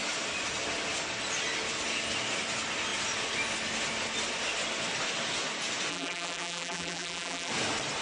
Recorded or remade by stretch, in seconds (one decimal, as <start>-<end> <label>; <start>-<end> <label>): 0.0-5.9 recorded; 5.9-7.5 remade; 7.5-8.0 recorded